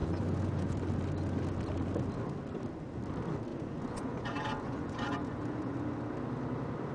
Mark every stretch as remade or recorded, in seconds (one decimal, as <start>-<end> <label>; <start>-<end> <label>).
0.0-0.8 remade; 0.8-3.5 recorded; 3.5-5.9 remade; 5.9-6.9 recorded